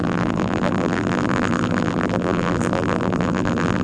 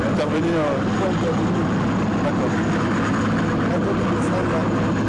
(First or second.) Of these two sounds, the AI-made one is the first